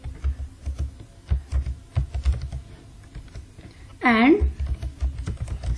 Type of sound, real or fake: real